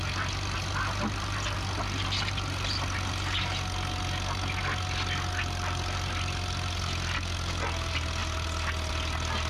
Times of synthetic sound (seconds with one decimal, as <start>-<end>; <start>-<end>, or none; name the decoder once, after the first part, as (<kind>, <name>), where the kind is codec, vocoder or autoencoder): 0.0-3.5 (vocoder, BigVGAN v2); 5.3-8.2; 8.9-9.5